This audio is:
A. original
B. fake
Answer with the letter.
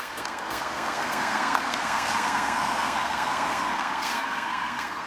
B